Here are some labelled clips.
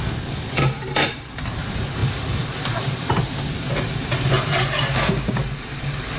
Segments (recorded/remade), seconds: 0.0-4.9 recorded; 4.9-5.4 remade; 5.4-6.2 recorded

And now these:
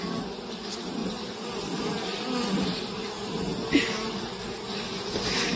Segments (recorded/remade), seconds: 0.0-5.6 recorded

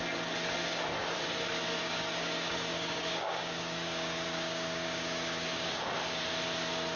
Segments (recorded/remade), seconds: 0.0-1.8 recorded; 1.8-5.8 remade; 5.8-7.0 recorded

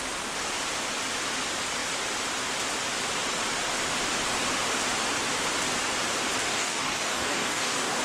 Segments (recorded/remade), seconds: 0.0-6.5 recorded; 6.5-8.0 remade

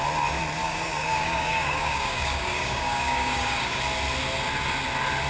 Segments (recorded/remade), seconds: 0.0-0.6 recorded; 0.6-3.8 remade; 3.8-5.3 recorded

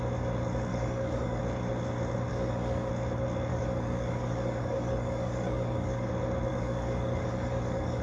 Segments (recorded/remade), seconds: 0.0-0.7 recorded; 0.7-1.4 remade; 1.4-2.3 recorded; 2.3-2.9 remade; 2.9-3.5 recorded; 3.5-6.1 remade; 6.1-6.5 recorded; 6.5-8.0 remade

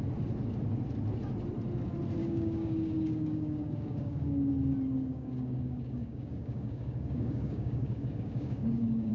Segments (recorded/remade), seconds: 0.0-2.2 recorded; 2.2-4.5 remade; 4.5-5.1 recorded; 5.1-9.1 remade

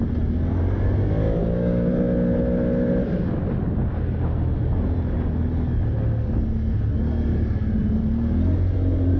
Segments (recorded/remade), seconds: 0.0-1.4 recorded; 1.4-1.9 remade; 1.9-9.2 recorded